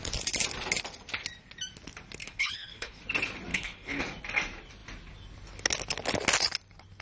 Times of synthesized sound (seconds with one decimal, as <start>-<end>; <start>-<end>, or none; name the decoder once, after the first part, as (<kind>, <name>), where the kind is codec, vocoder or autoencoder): 2.2-3.0 (codec, HILCodec); 3.5-4.0

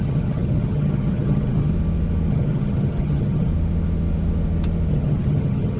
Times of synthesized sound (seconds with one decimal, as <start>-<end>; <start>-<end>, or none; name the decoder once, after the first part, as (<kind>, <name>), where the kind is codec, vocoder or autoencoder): 0.0-1.7 (vocoder, HiFi-GAN); 2.3-3.5; 4.9-5.8

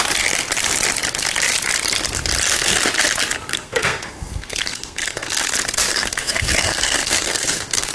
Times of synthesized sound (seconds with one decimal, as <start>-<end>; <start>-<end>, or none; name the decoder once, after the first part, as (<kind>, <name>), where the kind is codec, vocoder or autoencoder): 3.5-5.5 (codec, SNAC); 5.9-7.9

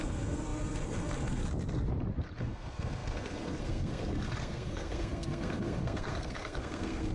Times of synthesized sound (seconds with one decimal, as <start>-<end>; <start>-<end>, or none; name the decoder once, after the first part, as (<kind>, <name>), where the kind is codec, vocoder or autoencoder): 0.0-1.4 (codec, SNAC); 2.4-7.1

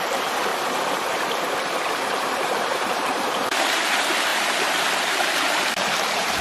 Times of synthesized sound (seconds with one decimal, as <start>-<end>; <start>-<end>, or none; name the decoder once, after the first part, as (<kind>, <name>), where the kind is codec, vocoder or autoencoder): 0.0-0.5 (vocoder, BigVGAN v2); 1.0-6.4

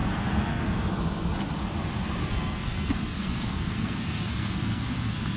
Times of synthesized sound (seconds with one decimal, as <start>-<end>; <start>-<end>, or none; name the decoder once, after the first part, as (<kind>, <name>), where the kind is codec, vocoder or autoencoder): 0.0-0.9 (codec, SNAC); 2.2-5.4

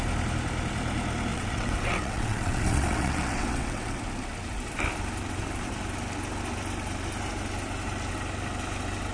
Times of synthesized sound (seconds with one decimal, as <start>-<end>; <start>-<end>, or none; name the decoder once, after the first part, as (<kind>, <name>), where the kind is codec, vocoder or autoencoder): 1.3-4.0 (vocoder, WaveNeXt)

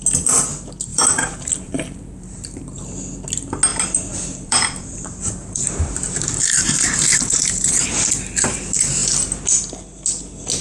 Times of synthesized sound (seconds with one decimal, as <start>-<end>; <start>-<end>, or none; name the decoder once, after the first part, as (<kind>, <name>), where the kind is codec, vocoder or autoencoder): 0.9-2.8 (vocoder, BigVGAN v2); 3.7-7.9